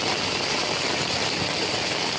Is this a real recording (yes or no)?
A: yes